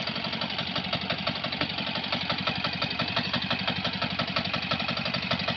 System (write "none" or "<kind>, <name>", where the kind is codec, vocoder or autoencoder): none